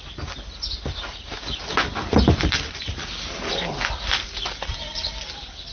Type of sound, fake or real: real